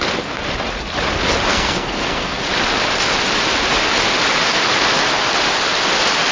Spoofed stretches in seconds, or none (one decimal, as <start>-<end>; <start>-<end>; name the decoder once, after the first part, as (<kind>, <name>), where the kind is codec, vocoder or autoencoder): 1.5-2.4 (codec, SNAC)